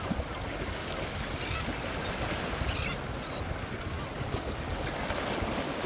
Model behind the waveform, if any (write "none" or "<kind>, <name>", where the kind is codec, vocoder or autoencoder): none